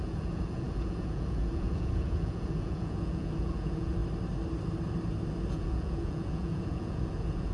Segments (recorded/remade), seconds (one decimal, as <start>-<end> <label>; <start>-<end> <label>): 0.0-4.0 remade; 4.0-5.5 recorded; 5.5-7.5 remade